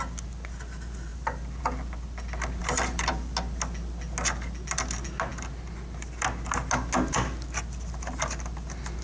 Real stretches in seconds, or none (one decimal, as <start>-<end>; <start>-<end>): 0.0-1.1; 1.6-2.6; 3.1-9.0